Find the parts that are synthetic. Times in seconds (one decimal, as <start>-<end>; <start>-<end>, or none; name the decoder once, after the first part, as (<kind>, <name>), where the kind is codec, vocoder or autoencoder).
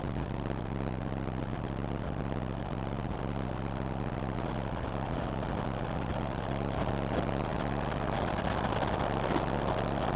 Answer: none